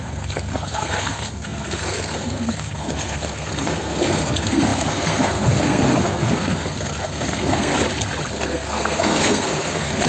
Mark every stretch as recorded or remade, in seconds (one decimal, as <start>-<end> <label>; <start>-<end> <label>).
0.0-7.7 remade; 7.7-8.3 recorded; 8.3-10.1 remade